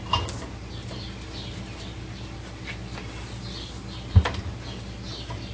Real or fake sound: real